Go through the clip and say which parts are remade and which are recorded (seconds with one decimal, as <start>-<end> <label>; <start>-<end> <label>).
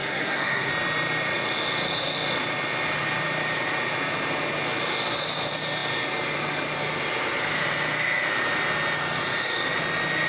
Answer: 0.0-0.7 remade; 0.7-10.3 recorded